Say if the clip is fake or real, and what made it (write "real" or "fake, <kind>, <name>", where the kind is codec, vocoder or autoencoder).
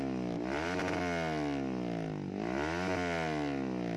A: real